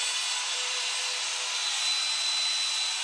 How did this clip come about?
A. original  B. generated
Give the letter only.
A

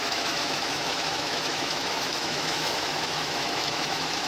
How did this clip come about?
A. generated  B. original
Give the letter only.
A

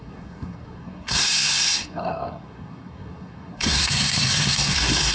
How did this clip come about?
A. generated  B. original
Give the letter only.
A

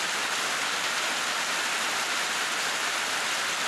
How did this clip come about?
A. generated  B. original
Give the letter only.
B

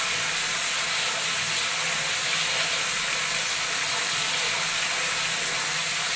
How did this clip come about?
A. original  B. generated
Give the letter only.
A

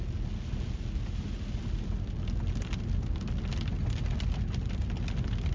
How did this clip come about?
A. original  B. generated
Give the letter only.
A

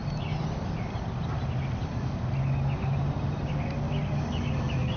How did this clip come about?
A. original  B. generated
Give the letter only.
A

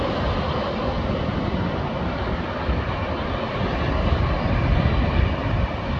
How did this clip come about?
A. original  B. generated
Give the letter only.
A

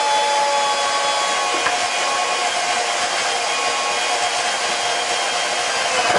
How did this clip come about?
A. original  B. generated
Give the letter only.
A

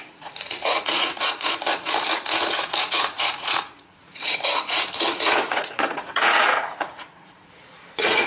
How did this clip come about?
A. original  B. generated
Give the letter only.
B